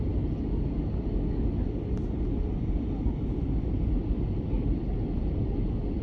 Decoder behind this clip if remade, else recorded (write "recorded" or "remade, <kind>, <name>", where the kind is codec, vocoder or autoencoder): recorded